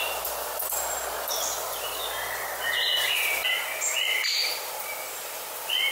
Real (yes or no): yes